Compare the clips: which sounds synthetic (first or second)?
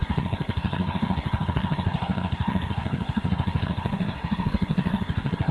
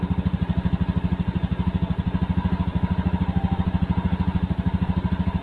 first